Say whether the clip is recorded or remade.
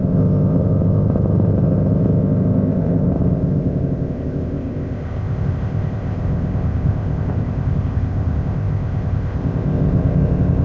remade